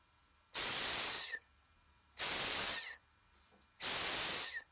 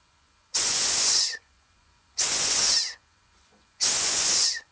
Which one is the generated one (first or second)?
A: second